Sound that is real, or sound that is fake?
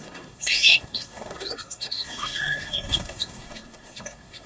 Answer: fake